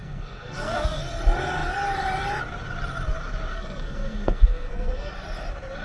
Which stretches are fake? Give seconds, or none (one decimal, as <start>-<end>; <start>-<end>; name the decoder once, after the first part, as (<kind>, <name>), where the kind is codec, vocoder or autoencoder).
0.0-1.0 (codec, SNAC); 3.5-5.1